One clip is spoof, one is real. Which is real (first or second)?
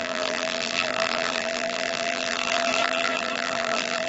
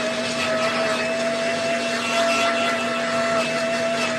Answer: second